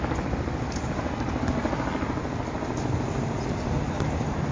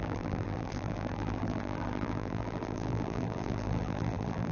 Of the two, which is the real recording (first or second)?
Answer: first